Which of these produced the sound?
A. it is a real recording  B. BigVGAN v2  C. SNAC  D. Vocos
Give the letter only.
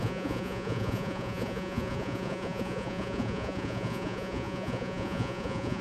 D